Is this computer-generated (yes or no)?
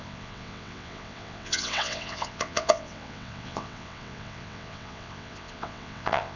yes